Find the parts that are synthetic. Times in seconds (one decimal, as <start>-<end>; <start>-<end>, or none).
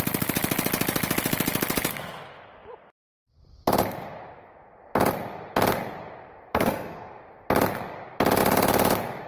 6.5-7.2